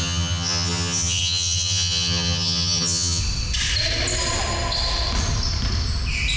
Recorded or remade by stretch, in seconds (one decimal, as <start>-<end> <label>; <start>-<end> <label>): 0.0-3.2 remade; 3.2-6.4 recorded